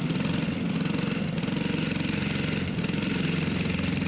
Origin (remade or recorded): recorded